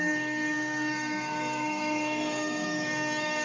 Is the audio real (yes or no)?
no